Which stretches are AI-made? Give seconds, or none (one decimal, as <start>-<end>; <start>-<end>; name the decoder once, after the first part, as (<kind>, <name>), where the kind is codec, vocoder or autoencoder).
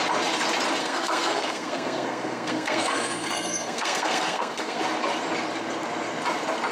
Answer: 0.8-4.8 (codec, SNAC)